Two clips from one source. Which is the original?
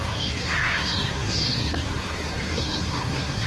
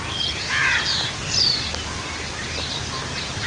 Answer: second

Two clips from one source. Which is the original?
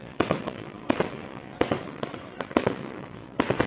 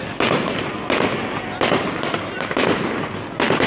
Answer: second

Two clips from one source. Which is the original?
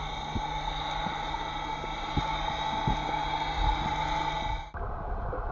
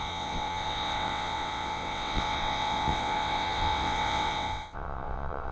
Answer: first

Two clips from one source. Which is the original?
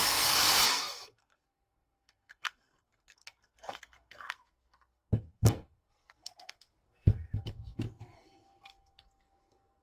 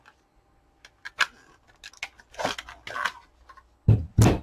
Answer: second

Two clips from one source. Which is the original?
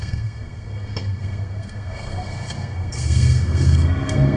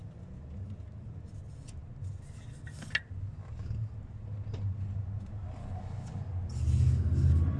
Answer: second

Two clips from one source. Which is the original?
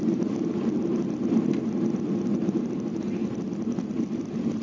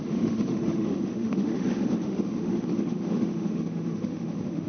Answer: first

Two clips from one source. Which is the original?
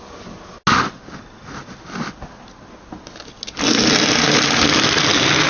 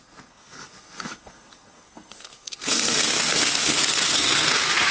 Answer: first